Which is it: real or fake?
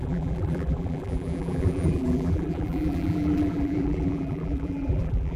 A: fake